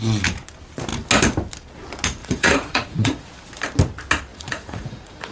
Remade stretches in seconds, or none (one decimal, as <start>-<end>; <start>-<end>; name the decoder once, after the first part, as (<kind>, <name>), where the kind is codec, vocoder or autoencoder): 2.2-3.3 (vocoder, Vocos); 4.3-5.3